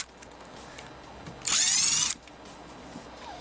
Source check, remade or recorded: recorded